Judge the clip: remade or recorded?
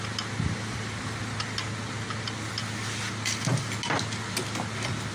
recorded